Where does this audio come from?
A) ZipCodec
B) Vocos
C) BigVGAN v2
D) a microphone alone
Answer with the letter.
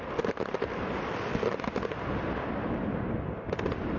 D